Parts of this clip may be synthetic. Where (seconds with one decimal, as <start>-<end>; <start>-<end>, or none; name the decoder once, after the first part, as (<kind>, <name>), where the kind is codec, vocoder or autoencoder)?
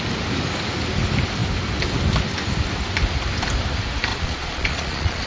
4.1-5.3 (vocoder, Vocos)